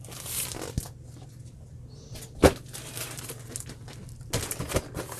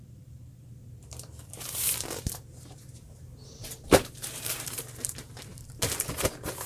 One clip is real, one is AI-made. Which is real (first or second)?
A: first